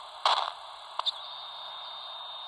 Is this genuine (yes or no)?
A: yes